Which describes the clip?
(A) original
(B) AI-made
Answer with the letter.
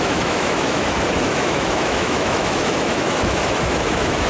B